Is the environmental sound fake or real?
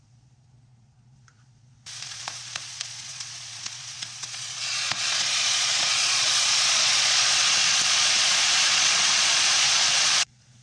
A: fake